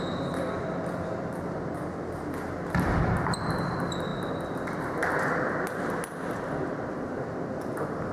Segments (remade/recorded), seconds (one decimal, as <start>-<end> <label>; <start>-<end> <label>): 0.0-8.1 recorded